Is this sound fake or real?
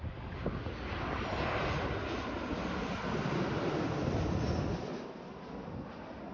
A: real